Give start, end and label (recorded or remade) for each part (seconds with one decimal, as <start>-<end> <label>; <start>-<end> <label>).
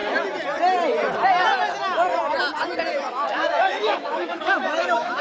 0.0-3.1 recorded; 3.1-5.2 remade